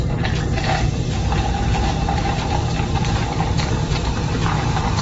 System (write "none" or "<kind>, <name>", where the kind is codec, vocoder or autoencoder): vocoder, BigVGAN v2